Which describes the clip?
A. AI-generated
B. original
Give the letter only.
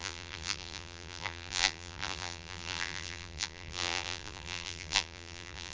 A